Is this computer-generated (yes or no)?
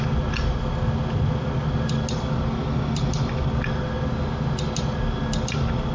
no